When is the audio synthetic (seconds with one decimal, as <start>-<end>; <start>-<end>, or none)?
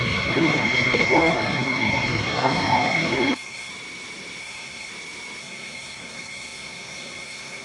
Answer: 0.0-3.7; 4.4-4.9; 5.4-7.6